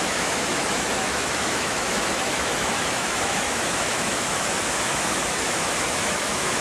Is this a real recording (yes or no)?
no